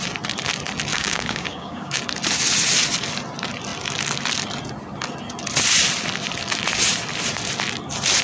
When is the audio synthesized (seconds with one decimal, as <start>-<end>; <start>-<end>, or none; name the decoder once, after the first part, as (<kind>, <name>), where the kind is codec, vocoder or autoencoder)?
0.9-2.0 (codec, DAC)